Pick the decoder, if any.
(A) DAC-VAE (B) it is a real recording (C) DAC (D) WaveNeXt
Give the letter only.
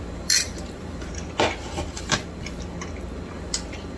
B